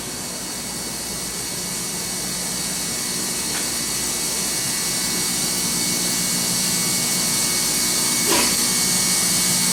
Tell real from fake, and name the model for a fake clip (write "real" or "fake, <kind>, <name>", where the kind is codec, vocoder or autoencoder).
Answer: real